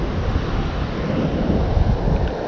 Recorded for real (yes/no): yes